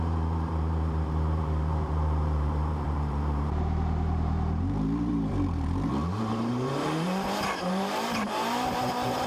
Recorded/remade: remade